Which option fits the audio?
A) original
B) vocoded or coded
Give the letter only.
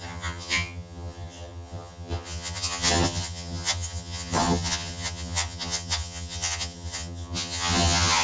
B